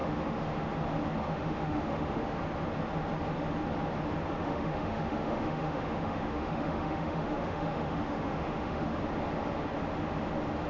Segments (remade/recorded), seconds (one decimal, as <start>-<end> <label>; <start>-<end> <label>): 0.0-0.7 remade; 0.7-1.2 recorded; 1.2-2.4 remade; 2.4-4.4 recorded; 4.4-9.0 remade; 9.0-10.7 recorded